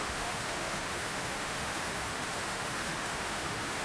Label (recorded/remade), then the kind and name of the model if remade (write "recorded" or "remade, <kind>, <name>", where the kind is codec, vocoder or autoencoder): remade, autoencoder, DAC-VAE